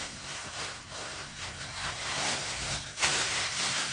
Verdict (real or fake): fake